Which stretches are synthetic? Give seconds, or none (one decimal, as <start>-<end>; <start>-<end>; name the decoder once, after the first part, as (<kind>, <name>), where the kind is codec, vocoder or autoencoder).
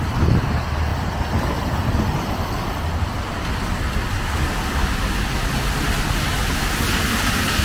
none